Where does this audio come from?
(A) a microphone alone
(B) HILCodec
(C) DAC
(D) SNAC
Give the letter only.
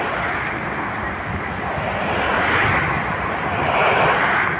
A